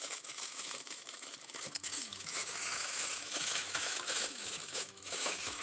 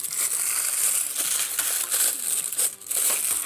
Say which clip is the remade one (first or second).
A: first